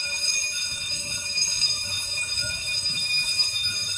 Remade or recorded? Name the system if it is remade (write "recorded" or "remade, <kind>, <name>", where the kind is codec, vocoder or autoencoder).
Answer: remade, autoencoder, DAC-VAE